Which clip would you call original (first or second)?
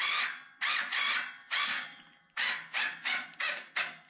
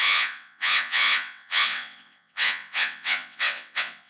first